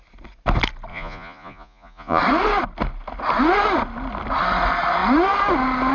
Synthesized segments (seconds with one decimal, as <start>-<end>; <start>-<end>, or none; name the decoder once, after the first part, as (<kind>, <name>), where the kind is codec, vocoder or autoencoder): 0.9-2.2 (vocoder, Vocos)